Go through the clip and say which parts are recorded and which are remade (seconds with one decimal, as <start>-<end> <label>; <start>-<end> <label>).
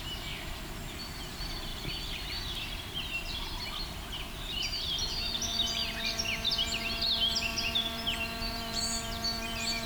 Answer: 0.0-7.5 recorded; 7.5-9.9 remade